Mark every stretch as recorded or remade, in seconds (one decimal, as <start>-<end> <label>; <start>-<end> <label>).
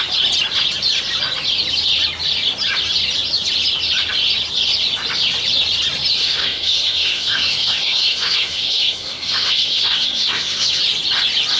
0.0-6.2 recorded; 6.2-10.8 remade; 10.8-11.6 recorded